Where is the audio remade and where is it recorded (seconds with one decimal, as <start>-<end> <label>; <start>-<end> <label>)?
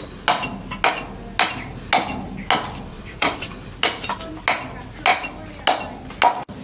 0.0-2.9 recorded; 2.9-3.5 remade; 3.5-6.6 recorded